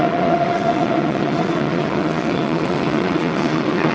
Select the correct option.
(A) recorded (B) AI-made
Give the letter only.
B